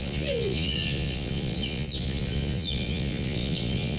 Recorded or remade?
remade